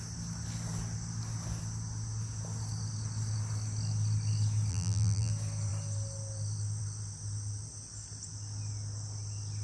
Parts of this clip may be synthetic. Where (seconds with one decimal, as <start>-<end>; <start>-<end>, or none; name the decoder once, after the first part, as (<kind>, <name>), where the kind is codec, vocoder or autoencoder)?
4.7-5.3 (vocoder, BigVGAN v2)